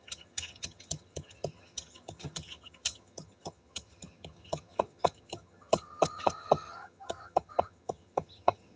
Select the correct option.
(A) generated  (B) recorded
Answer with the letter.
A